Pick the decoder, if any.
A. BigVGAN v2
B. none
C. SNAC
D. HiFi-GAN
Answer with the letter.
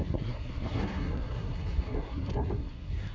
C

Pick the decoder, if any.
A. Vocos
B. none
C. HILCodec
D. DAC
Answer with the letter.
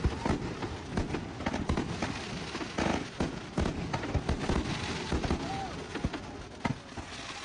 B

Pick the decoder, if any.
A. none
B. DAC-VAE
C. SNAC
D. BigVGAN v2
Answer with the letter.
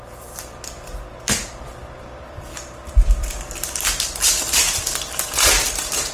D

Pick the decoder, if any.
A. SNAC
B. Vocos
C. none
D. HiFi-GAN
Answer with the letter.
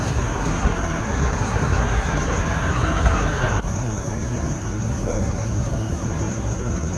A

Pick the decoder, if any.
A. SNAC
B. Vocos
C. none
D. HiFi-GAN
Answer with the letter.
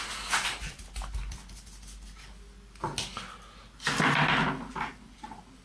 C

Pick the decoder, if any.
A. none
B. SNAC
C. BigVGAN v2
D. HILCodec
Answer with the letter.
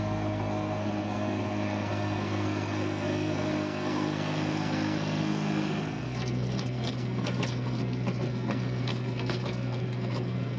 B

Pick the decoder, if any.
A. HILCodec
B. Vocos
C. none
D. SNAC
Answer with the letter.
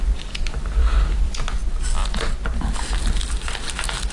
C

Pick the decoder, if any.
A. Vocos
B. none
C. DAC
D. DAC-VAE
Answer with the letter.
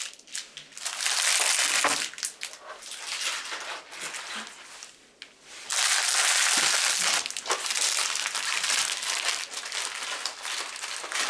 B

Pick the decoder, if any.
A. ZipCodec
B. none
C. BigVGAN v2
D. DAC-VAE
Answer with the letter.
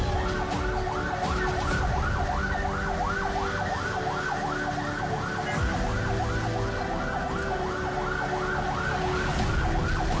B